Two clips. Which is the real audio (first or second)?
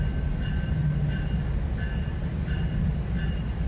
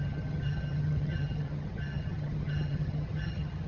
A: first